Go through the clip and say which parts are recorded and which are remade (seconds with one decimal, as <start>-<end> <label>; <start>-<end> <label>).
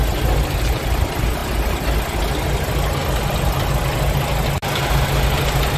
0.0-5.8 recorded